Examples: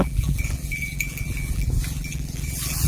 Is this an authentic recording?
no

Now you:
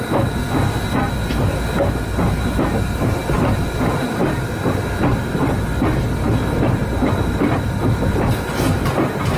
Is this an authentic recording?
yes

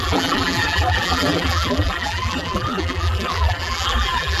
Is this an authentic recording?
no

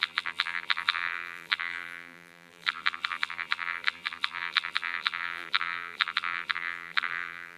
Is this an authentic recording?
no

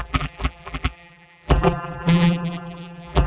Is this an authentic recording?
no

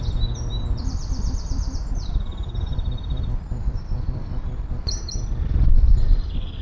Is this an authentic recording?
no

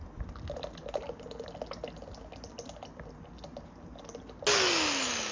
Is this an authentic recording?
yes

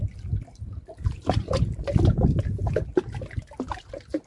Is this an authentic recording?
yes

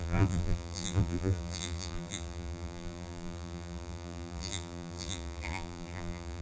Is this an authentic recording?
no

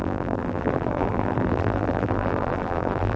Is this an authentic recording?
no